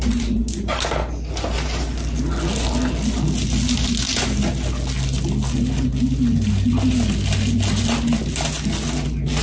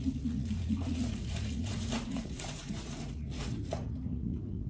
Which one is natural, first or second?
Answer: first